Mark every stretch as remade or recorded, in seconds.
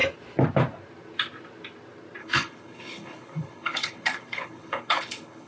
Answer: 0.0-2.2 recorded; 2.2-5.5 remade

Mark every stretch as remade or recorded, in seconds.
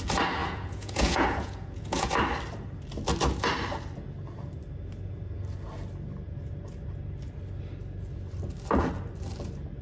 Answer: 0.0-0.4 recorded; 0.4-2.1 remade; 2.1-9.8 recorded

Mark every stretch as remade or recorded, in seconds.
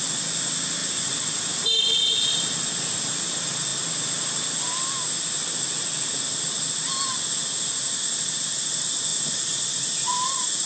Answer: 0.0-9.1 recorded; 9.1-10.7 remade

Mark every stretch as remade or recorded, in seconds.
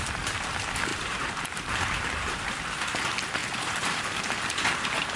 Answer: 0.0-0.9 recorded; 0.9-1.5 remade; 1.5-3.4 recorded; 3.4-4.2 remade; 4.2-5.2 recorded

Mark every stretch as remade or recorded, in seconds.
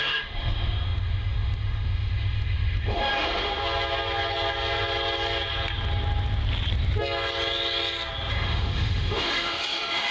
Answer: 0.0-3.6 remade; 3.6-8.3 recorded; 8.3-10.1 remade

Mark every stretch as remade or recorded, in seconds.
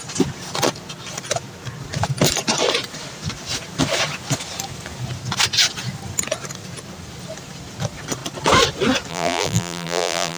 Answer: 0.0-9.1 recorded; 9.1-10.4 remade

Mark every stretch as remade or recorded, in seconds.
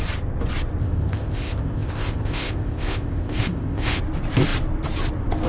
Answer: 0.0-0.8 recorded; 0.8-4.0 remade; 4.0-5.5 recorded